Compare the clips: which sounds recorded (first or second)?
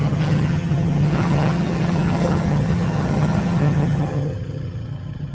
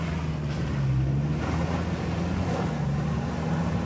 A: second